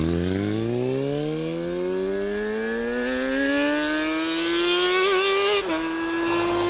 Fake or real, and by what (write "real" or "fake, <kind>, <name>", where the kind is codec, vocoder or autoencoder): real